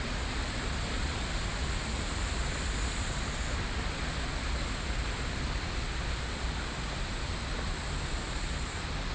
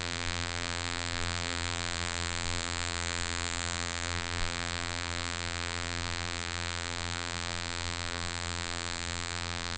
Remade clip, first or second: second